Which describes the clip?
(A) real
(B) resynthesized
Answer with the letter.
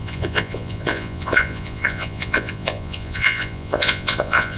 B